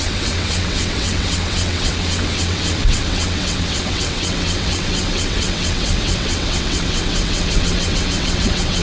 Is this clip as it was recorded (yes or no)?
no